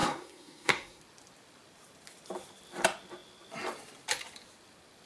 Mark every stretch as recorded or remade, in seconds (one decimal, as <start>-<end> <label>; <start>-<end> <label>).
0.0-1.0 remade; 1.0-5.1 recorded